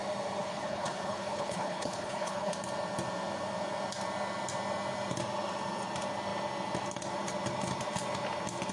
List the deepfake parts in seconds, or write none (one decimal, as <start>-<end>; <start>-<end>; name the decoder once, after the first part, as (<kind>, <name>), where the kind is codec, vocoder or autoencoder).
0.4-2.5 (codec, HILCodec)